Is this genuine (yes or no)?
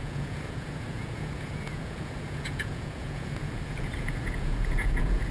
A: no